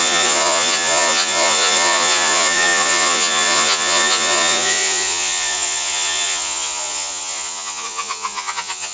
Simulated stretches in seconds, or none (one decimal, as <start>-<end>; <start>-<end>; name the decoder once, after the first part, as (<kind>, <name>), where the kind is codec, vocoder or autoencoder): 0.0-8.9 (vocoder, Vocos)